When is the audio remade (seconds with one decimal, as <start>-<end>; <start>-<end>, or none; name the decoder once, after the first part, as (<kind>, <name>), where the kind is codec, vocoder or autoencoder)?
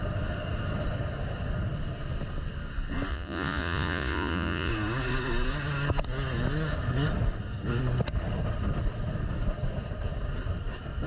3.1-4.7 (vocoder, Vocos)